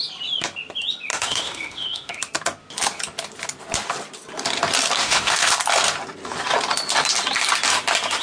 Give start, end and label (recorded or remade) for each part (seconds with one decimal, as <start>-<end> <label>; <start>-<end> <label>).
0.0-1.1 recorded; 1.1-2.2 remade; 2.2-5.0 recorded; 5.0-5.5 remade; 5.5-8.2 recorded